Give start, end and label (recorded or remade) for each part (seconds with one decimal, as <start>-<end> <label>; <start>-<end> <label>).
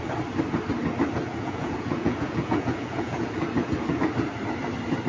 0.0-1.3 recorded; 1.3-4.0 remade; 4.0-5.1 recorded